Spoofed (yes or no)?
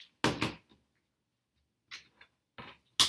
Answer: no